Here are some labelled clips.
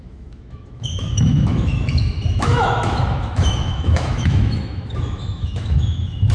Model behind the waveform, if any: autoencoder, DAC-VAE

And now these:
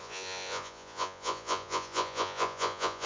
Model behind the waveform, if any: vocoder, Vocos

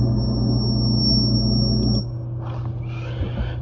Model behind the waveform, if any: none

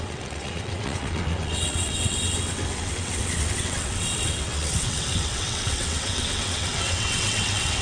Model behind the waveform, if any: vocoder, WaveNeXt